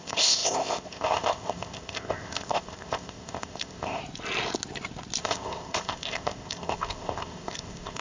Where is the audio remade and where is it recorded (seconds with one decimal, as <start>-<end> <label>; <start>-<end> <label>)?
0.0-4.0 remade; 4.0-5.2 recorded; 5.2-8.0 remade